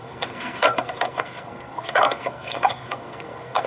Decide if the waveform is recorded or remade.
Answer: remade